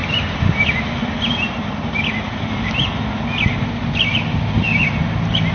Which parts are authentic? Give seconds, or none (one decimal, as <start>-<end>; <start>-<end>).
0.7-5.5

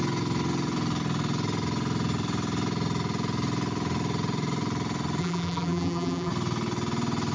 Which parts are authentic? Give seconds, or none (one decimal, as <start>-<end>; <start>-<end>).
0.0-5.2; 6.3-7.3

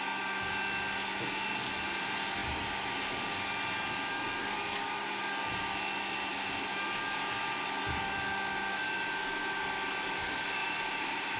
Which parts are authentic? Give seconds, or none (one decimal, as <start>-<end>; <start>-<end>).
0.0-10.6

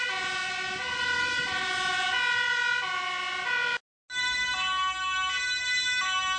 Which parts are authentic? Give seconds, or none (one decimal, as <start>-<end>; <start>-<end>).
0.0-6.4